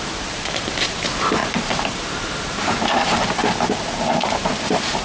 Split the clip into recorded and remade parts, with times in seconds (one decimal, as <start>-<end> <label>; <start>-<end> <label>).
0.0-3.4 remade; 3.4-4.1 recorded; 4.1-5.0 remade